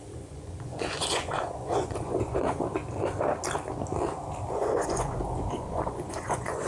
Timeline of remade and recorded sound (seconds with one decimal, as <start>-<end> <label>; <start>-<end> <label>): 0.0-2.8 remade; 2.8-4.5 recorded; 4.5-6.7 remade